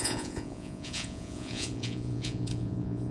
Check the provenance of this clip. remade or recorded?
remade